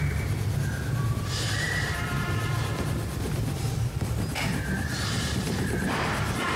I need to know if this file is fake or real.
fake